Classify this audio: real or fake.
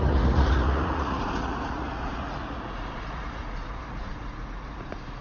fake